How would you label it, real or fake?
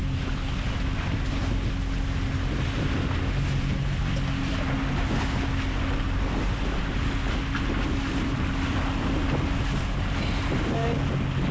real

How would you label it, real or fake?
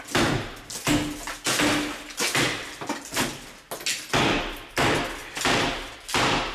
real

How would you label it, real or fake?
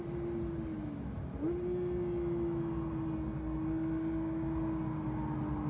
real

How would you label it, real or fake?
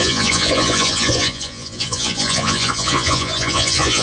fake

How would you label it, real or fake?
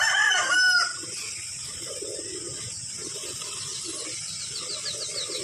real